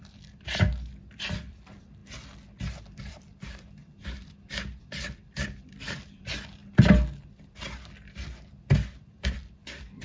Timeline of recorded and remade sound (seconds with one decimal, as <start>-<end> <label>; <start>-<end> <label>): 0.0-2.0 remade; 2.0-2.8 recorded; 2.8-3.8 remade; 3.8-4.8 recorded; 4.8-6.6 remade; 6.6-9.1 recorded; 9.1-10.0 remade